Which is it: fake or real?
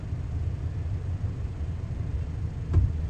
real